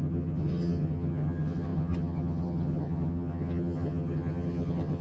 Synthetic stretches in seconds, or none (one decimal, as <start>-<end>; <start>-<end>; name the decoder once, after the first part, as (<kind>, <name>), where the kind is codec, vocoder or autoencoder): 0.0-5.0 (vocoder, HiFi-GAN)